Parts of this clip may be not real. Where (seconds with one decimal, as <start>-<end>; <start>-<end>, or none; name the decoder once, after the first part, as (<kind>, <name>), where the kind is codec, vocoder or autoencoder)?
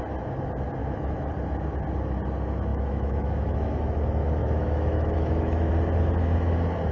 0.8-1.3 (autoencoder, DAC-VAE); 2.7-3.8; 4.4-5.7